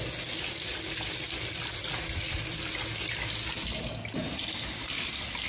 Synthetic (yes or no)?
no